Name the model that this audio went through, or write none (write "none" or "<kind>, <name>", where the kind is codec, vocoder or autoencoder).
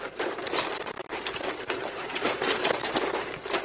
vocoder, BigVGAN v2